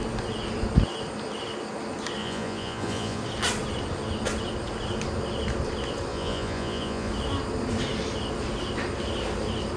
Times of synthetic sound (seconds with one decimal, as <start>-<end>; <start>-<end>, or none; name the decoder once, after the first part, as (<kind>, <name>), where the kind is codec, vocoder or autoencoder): 2.2-3.2 (vocoder, Vocos); 6.1-7.1